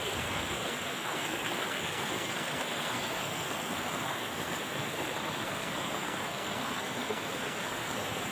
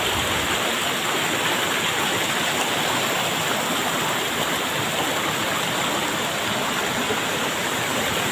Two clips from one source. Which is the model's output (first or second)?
first